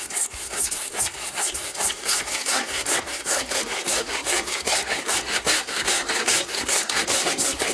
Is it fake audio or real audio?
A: fake